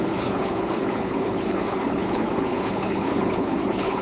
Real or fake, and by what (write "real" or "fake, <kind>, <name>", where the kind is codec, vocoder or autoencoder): fake, codec, HILCodec